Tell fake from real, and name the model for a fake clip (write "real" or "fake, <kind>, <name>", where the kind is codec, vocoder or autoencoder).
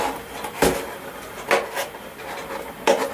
real